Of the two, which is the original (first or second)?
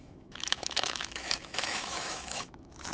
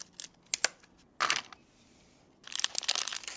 second